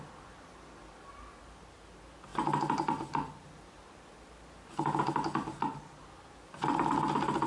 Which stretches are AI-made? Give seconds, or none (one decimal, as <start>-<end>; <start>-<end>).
none